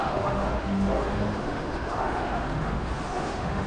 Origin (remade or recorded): remade